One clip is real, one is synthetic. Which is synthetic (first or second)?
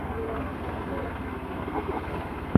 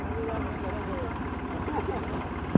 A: first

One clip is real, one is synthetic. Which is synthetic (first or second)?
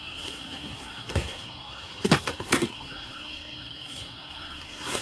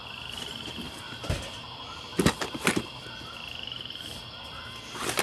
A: first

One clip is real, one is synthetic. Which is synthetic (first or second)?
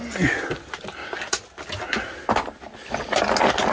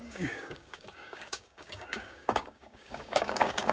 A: second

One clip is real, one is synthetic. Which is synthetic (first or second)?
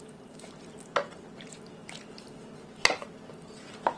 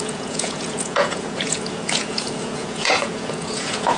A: second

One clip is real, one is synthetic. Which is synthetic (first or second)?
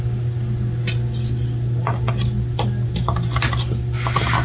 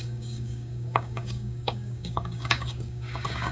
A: second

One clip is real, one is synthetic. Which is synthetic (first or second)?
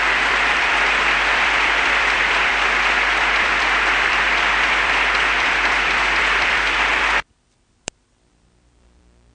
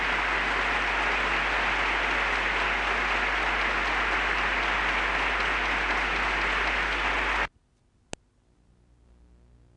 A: first